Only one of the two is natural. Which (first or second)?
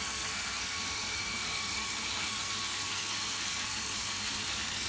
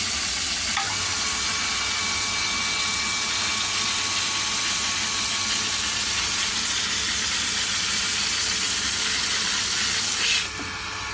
second